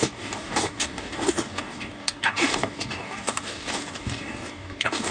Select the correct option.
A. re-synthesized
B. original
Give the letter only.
A